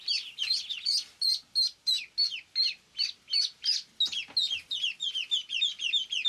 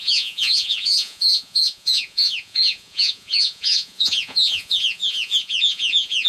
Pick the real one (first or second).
first